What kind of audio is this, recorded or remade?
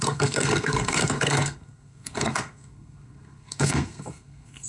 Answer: remade